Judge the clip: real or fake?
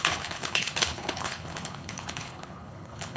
fake